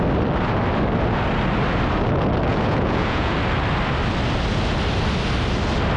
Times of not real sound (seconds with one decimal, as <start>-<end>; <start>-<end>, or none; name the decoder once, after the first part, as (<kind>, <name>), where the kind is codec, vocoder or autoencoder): 2.5-3.3 (vocoder, Vocos)